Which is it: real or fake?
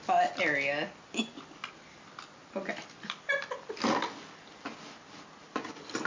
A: real